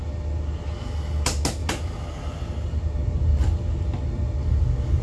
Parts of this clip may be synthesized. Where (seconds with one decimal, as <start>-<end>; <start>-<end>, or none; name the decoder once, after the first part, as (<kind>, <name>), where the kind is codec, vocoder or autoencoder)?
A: none